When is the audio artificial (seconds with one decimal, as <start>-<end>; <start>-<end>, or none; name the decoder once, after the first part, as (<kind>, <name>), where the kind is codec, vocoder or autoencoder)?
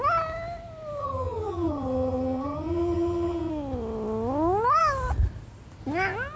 1.0-3.5 (vocoder, HiFi-GAN)